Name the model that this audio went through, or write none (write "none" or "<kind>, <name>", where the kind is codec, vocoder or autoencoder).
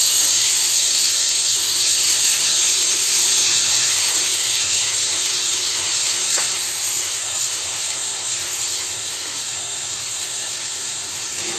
codec, SNAC